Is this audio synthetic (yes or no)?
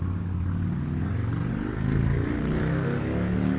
no